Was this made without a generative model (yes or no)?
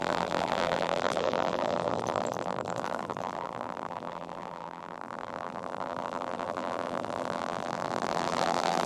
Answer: no